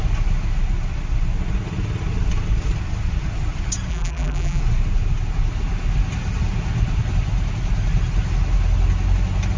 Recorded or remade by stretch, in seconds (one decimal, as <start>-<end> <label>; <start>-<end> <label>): 0.0-3.9 recorded; 3.9-4.6 remade; 4.6-9.6 recorded